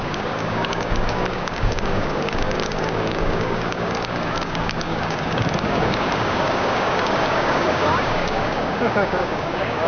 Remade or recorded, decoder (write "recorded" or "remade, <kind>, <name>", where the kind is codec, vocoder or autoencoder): remade, codec, DAC